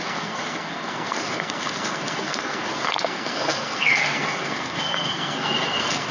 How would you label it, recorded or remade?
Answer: remade